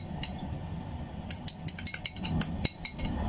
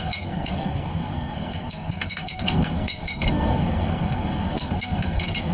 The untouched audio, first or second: first